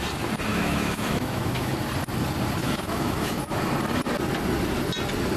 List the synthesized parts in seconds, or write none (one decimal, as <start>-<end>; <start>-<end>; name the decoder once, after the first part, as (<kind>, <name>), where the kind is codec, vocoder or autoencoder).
0.5-1.7 (autoencoder, DAC-VAE); 2.6-3.4